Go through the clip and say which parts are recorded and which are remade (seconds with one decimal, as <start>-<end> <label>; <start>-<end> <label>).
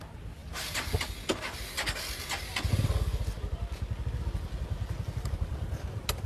0.0-6.3 recorded